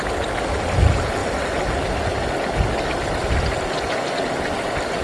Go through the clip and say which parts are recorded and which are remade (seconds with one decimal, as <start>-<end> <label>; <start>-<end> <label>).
0.0-5.0 recorded